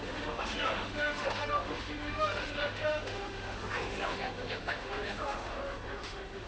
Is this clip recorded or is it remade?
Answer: remade